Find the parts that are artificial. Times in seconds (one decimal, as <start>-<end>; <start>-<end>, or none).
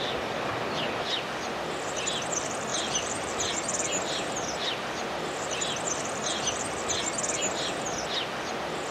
2.7-6.5